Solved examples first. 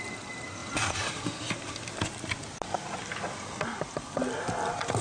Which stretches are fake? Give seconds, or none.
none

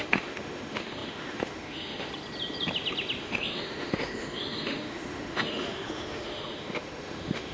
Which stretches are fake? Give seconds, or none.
0.0-2.1 (autoencoder, DAC-VAE); 3.2-7.5

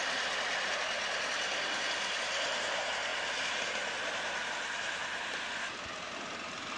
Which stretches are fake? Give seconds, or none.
none

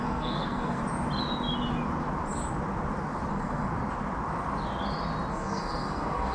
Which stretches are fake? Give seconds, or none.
0.0-0.8 (codec, SNAC); 3.3-3.7; 5.3-6.3

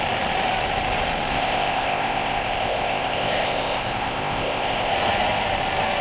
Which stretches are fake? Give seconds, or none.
1.3-4.9 (codec, ZipCodec)

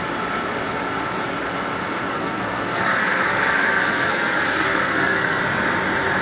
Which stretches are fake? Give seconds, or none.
2.1-5.4 (codec, SNAC)

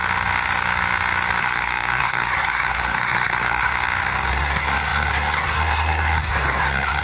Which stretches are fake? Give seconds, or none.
1.4-3.7 (codec, SNAC); 4.3-7.0